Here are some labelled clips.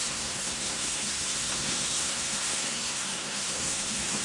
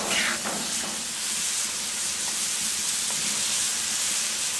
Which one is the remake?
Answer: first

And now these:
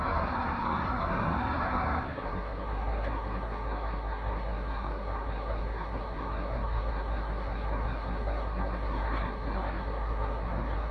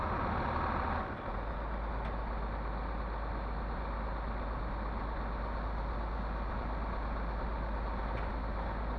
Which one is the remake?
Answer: first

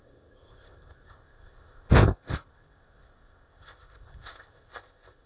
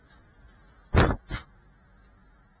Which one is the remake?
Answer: first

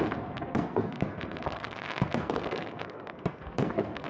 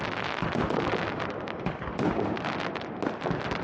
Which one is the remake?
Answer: first